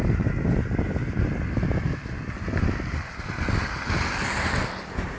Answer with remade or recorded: recorded